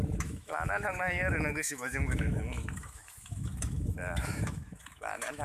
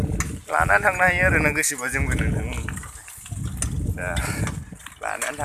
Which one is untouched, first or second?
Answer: second